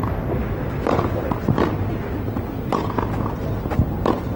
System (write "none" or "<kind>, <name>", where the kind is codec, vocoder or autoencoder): none